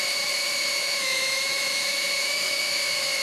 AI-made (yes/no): yes